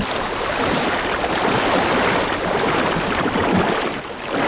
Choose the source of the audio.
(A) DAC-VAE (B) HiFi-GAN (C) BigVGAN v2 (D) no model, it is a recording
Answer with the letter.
D